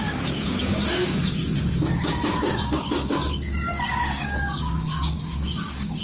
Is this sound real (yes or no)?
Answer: no